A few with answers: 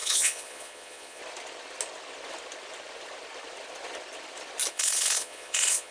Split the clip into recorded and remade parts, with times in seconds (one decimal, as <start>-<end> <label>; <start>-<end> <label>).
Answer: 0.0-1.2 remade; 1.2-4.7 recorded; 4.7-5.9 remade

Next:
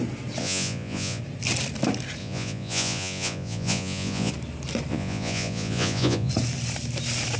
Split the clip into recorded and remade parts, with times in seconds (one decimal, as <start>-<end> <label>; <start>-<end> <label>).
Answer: 0.0-0.4 recorded; 0.4-1.2 remade; 1.2-2.2 recorded; 2.2-4.3 remade; 4.3-4.9 recorded; 4.9-6.3 remade; 6.3-7.4 recorded

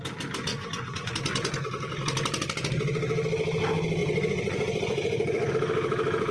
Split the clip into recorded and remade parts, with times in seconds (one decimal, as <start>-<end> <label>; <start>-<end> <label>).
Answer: 0.0-0.5 recorded; 0.5-1.1 remade; 1.1-4.0 recorded; 4.0-5.5 remade; 5.5-6.3 recorded

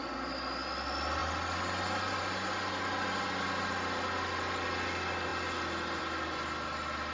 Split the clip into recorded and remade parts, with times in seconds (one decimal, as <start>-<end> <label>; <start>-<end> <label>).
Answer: 0.0-7.1 recorded